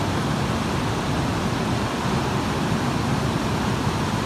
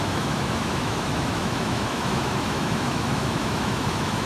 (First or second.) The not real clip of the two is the second